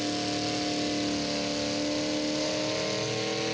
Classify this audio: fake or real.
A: real